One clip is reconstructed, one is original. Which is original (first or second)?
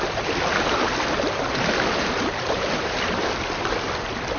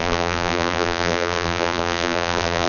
first